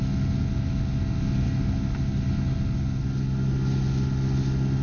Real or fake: real